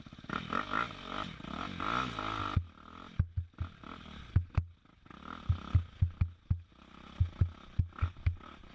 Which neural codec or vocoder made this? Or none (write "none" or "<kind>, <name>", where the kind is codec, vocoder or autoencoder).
none